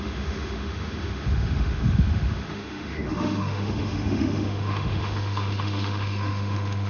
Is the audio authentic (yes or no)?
no